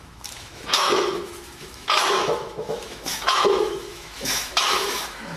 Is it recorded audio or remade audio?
remade